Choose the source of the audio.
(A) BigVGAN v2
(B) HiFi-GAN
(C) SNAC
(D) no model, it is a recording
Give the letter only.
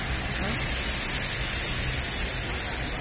D